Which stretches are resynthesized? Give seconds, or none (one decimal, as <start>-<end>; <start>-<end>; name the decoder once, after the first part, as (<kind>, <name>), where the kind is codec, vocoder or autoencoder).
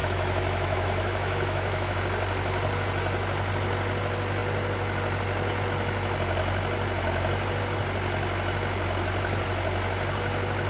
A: 0.0-2.0 (autoencoder, DAC-VAE)